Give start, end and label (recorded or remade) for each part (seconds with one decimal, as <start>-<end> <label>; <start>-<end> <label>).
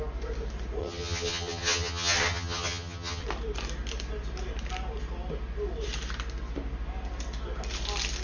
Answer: 0.0-0.8 recorded; 0.8-3.2 remade; 3.2-8.2 recorded